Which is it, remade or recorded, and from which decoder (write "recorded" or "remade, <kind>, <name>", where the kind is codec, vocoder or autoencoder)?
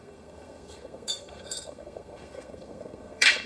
remade, codec, SNAC